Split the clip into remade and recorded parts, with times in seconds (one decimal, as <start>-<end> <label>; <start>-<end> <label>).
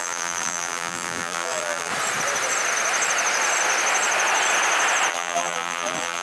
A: 0.0-1.9 remade; 1.9-5.1 recorded; 5.1-6.2 remade